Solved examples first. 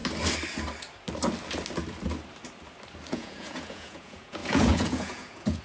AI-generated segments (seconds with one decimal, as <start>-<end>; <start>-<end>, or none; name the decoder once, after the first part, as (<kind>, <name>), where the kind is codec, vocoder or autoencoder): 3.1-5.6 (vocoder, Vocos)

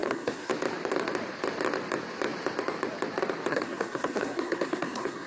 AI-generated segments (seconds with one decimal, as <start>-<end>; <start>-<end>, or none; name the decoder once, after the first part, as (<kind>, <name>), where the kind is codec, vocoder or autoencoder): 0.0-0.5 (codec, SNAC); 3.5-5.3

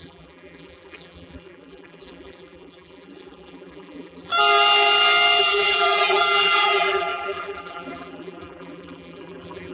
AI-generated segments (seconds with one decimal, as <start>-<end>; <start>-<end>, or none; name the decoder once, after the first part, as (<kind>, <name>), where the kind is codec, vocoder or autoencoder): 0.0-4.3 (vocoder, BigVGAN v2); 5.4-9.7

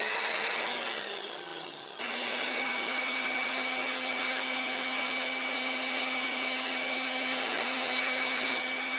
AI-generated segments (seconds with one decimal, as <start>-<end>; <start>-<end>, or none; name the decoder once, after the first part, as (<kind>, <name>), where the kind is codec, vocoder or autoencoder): 0.0-9.0 (vocoder, HiFi-GAN)

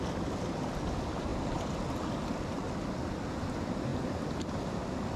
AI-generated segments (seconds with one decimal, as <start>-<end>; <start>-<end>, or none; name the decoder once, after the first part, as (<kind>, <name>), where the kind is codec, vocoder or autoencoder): none